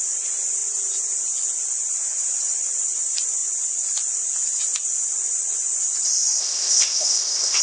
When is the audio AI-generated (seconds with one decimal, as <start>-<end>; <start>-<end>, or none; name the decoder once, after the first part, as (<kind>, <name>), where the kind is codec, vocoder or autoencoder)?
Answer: 6.4-7.6 (codec, ZipCodec)